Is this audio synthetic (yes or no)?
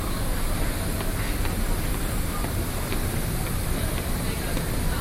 no